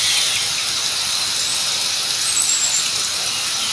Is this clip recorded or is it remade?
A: recorded